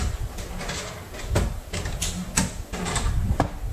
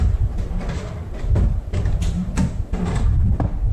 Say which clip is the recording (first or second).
first